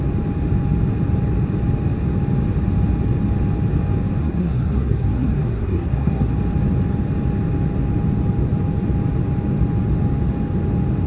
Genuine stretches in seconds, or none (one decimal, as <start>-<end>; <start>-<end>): 0.0-4.2; 6.3-11.1